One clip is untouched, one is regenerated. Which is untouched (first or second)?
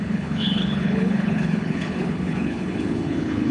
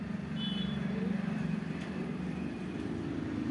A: second